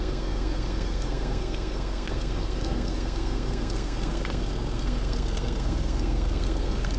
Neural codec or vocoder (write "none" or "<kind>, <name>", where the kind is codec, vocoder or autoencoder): codec, SNAC